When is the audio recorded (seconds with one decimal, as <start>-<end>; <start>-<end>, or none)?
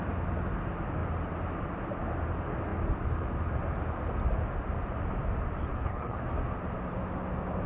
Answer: 0.0-5.7; 6.2-7.7